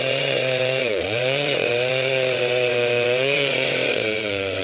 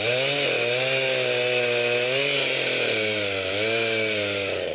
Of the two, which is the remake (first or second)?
first